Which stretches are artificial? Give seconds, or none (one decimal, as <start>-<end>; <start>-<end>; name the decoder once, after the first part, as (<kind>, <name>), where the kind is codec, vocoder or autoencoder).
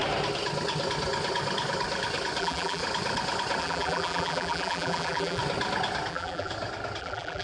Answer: 2.4-2.8 (vocoder, BigVGAN v2); 3.6-5.4; 6.1-6.5; 7.0-7.4